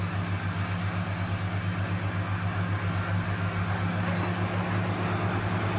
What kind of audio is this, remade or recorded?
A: recorded